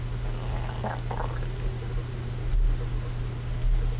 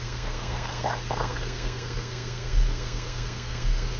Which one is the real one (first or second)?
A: first